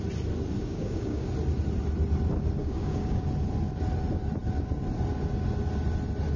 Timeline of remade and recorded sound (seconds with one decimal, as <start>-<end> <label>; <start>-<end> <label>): 0.0-0.6 recorded; 0.6-1.3 remade; 1.3-2.6 recorded; 2.6-3.2 remade; 3.2-6.4 recorded